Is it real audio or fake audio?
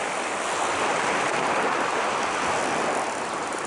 real